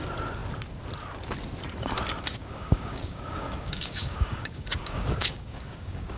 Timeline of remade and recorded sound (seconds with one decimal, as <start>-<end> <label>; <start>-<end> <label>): 0.0-2.3 recorded; 2.3-6.2 remade